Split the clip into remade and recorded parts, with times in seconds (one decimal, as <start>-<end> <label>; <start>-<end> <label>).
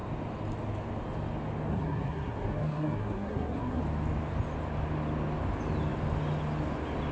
0.0-1.7 recorded; 1.7-3.8 remade; 3.8-7.1 recorded